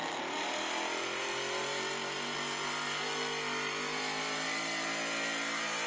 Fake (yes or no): no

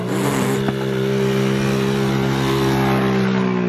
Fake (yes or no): no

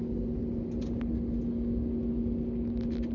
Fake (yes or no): no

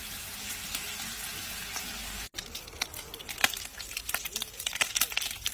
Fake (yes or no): no